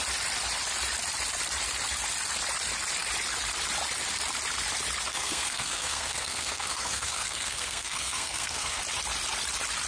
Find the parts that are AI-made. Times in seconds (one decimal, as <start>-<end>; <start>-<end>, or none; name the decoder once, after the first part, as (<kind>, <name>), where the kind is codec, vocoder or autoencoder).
5.1-8.8 (codec, SNAC)